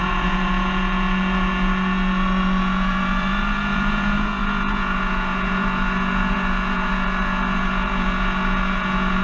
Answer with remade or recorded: remade